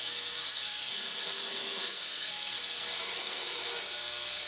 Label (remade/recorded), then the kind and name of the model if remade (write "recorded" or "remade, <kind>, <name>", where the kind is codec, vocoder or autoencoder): remade, codec, SNAC